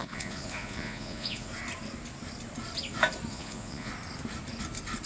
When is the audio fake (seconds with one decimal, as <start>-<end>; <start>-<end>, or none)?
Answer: 0.0-1.5; 3.3-3.9

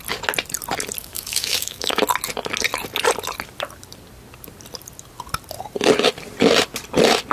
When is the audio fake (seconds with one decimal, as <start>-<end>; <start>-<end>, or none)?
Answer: 1.0-2.0